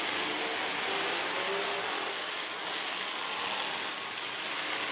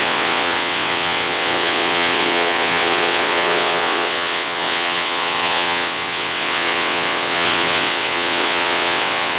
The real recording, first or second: first